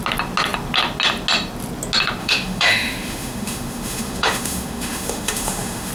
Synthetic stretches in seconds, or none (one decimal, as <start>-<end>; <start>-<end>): 2.2-5.9